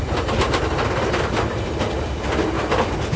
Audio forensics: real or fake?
real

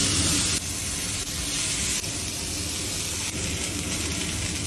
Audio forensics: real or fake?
real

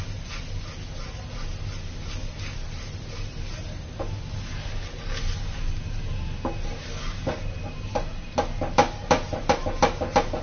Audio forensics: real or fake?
real